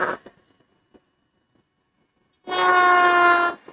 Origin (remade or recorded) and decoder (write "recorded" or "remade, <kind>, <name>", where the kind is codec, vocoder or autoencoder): recorded